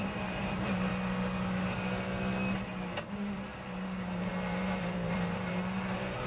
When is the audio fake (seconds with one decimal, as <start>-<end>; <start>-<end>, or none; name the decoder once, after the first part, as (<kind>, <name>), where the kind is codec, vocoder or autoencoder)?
0.0-0.9 (vocoder, BigVGAN v2); 3.1-6.3